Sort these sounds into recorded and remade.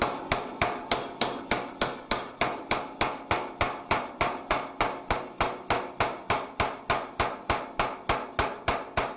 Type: recorded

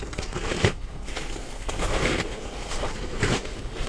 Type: remade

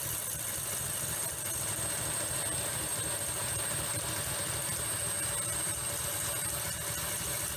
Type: recorded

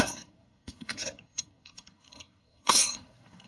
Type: remade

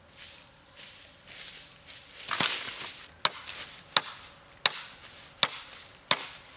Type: recorded